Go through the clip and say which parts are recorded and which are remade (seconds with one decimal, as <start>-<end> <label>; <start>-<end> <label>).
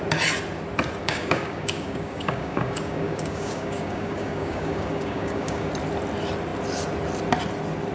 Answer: 0.0-1.0 recorded; 1.0-5.7 remade; 5.7-7.9 recorded